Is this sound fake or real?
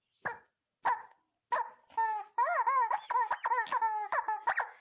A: real